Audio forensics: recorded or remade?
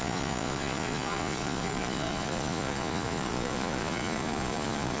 remade